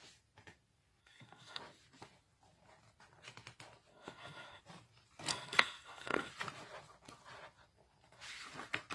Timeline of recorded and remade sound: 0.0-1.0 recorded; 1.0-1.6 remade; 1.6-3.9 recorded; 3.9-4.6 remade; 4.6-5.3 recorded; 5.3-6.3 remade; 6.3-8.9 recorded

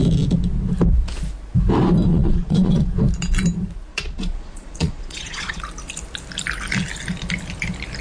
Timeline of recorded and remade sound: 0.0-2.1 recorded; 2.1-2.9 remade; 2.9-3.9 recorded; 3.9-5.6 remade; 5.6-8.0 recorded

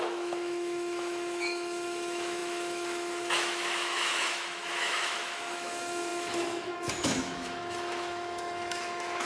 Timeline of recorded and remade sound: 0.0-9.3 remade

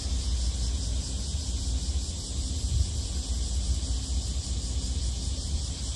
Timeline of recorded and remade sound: 0.0-6.0 recorded